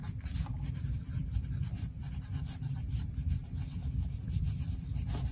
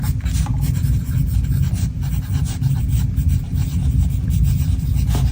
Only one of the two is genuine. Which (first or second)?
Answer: second